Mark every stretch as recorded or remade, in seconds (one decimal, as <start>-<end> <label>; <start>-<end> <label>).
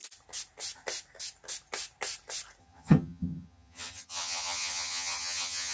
0.0-2.6 recorded; 2.6-5.7 remade